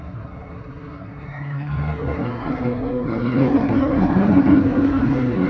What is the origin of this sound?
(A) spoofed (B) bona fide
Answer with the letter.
A